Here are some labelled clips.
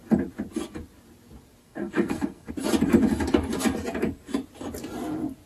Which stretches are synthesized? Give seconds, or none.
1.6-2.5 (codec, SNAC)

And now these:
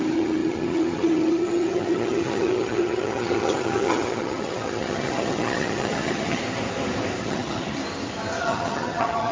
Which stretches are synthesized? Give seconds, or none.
0.0-6.4 (vocoder, HiFi-GAN); 7.2-7.8; 8.4-9.3

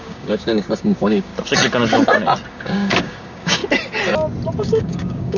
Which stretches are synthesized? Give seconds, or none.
0.0-1.3 (codec, DAC); 2.5-3.6; 4.6-5.4

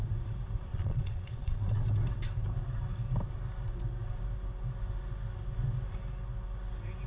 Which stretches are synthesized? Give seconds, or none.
0.7-1.7 (vocoder, Vocos)